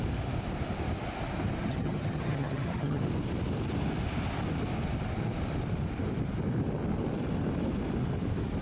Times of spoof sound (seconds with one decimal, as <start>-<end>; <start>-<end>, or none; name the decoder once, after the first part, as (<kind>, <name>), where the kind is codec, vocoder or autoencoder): 1.6-3.0 (vocoder, HiFi-GAN)